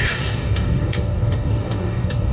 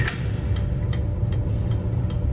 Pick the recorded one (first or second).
second